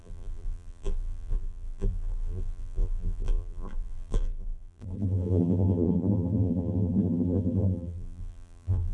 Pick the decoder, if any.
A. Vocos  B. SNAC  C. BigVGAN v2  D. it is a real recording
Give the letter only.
C